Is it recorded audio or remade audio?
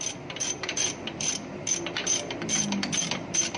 remade